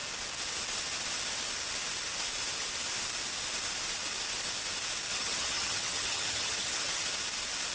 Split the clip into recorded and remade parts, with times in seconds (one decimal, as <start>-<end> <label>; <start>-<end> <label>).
0.0-5.1 recorded; 5.1-7.1 remade; 7.1-7.7 recorded